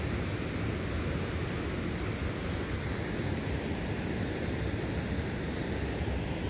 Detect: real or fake fake